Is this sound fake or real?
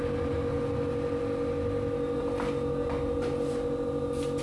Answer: real